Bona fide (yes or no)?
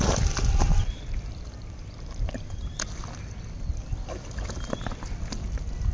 yes